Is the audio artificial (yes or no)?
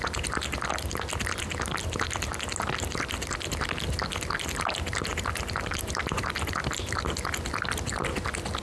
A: no